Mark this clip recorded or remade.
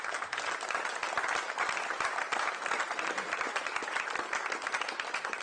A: remade